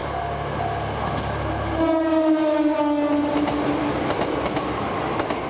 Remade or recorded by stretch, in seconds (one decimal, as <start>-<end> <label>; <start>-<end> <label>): 0.0-5.5 recorded